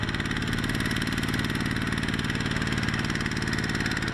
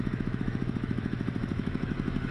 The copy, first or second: second